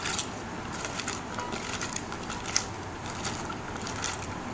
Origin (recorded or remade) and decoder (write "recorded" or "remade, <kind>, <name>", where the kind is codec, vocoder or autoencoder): recorded